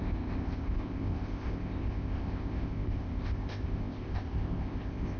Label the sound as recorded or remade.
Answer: remade